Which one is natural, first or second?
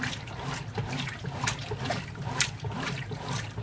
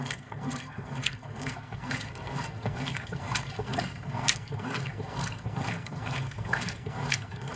first